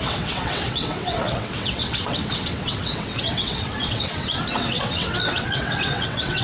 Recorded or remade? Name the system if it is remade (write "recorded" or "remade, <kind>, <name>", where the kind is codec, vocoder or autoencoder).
remade, vocoder, WaveNeXt